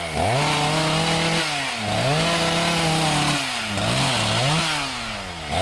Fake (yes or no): no